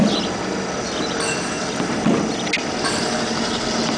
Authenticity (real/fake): real